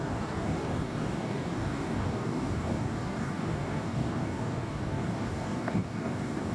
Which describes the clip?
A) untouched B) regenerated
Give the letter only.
B